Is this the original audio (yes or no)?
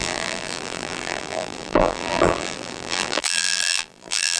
no